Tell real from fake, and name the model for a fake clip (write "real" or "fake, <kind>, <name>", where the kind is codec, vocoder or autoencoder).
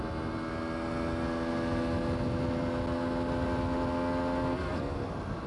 real